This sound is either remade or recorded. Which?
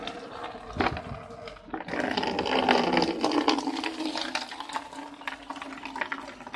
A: recorded